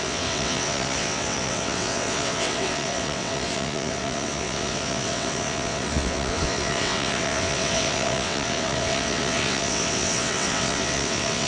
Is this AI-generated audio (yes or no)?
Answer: yes